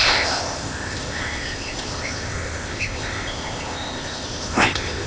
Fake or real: fake